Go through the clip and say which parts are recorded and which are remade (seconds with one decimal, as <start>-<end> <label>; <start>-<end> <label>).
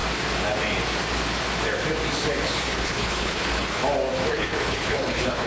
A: 0.0-2.4 recorded; 2.4-3.8 remade; 3.8-4.3 recorded; 4.3-5.5 remade